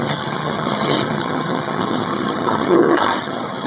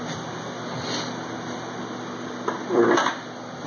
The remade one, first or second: first